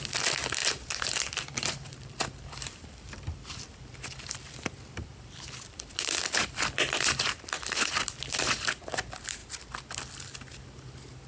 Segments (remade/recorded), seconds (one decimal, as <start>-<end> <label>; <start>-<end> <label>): 0.0-0.6 recorded; 0.6-4.6 remade; 4.6-5.1 recorded; 5.1-8.8 remade; 8.8-11.3 recorded